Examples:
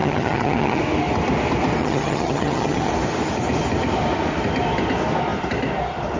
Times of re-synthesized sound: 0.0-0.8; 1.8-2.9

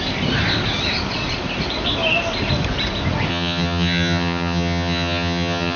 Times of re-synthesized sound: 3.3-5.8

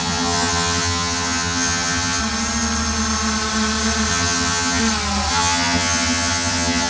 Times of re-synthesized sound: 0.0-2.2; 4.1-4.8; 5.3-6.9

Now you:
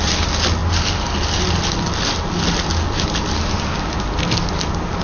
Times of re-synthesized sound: none

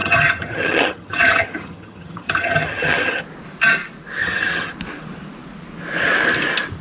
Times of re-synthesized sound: 0.0-3.2; 4.2-4.7

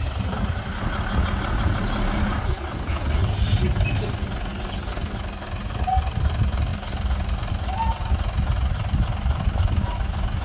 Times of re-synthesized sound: none

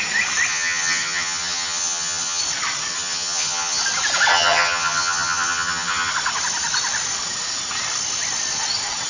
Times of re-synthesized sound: 0.5-2.4; 2.9-3.8; 4.3-6.1